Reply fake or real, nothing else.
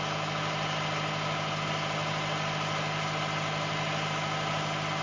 real